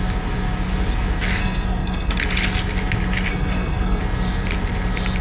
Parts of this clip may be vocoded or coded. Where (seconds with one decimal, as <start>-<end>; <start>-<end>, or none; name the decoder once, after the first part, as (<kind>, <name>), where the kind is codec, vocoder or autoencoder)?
1.4-2.1 (codec, SNAC); 3.3-4.0